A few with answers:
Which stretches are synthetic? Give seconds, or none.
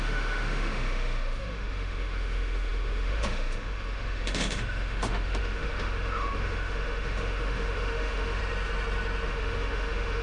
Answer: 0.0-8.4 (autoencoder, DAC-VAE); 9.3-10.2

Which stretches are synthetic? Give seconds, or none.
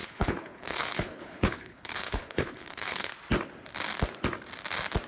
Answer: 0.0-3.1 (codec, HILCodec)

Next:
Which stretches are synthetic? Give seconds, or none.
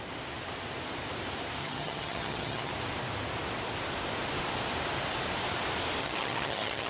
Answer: 1.6-2.7 (vocoder, HiFi-GAN); 6.0-6.9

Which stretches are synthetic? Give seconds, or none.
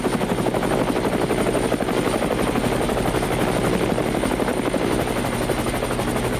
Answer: 4.5-5.7 (vocoder, BigVGAN v2)